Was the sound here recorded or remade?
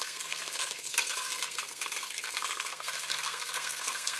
remade